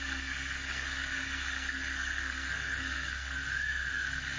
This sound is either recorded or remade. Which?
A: remade